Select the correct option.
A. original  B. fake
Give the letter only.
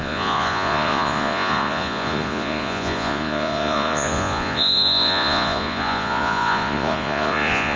B